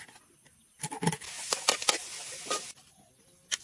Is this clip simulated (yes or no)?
no